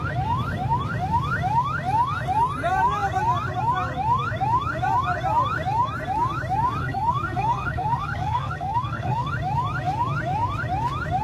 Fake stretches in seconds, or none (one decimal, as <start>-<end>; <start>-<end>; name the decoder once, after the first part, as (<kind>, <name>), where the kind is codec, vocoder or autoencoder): 6.8-9.3 (codec, SNAC)

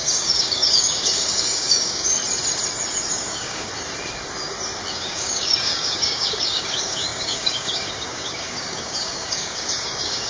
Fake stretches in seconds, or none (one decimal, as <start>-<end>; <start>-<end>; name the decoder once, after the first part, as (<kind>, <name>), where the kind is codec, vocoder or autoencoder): 0.0-2.2 (codec, DAC); 3.1-3.7; 4.9-10.3

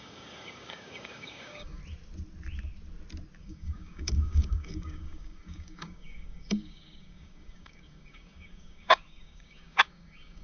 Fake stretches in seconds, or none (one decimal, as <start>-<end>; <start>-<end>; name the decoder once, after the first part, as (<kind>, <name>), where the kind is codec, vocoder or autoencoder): 0.0-1.8 (codec, DAC); 3.4-10.4

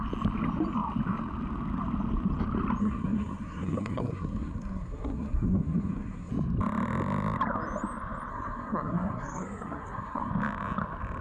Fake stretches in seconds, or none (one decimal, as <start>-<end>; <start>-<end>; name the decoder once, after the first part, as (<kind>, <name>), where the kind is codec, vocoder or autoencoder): 2.8-6.3 (codec, SNAC); 8.3-10.3

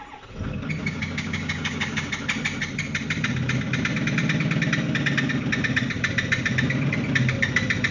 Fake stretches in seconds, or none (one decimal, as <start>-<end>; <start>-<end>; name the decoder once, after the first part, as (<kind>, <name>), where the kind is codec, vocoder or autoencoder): 0.8-2.1 (codec, DAC)